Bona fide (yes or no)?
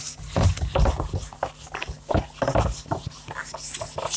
yes